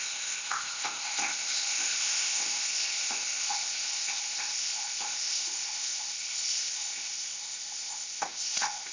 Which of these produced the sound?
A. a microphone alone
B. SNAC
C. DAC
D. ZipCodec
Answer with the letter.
D